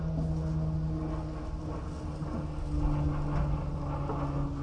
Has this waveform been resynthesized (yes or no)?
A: no